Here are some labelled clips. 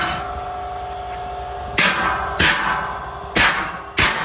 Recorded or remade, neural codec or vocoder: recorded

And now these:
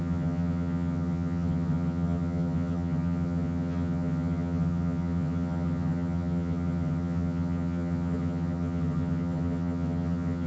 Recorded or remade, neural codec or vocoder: remade, vocoder, HiFi-GAN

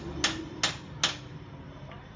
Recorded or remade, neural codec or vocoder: recorded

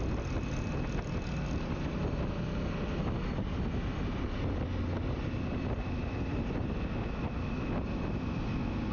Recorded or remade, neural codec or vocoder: recorded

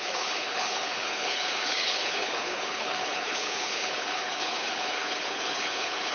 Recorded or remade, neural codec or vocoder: remade, codec, HILCodec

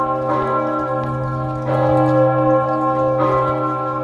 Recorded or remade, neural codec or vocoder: recorded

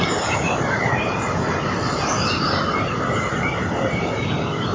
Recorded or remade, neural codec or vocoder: recorded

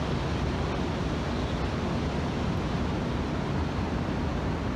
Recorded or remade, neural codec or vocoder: recorded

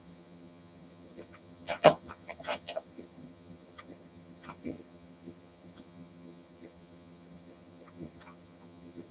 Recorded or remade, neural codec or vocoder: remade, vocoder, HiFi-GAN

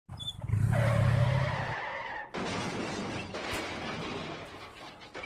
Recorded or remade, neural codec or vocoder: recorded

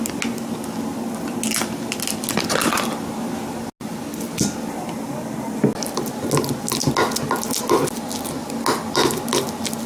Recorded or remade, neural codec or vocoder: recorded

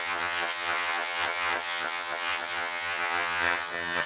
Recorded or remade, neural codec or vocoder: remade, vocoder, HiFi-GAN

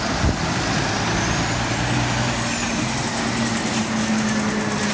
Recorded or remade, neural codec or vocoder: recorded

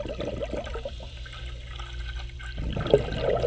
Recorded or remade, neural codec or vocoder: recorded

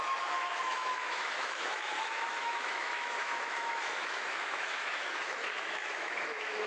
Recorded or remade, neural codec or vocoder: remade, autoencoder, DAC-VAE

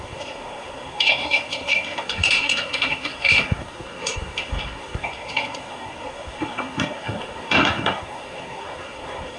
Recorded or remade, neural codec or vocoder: remade, codec, SNAC